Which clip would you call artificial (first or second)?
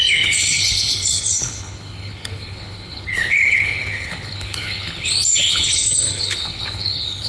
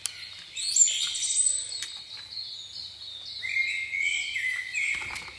first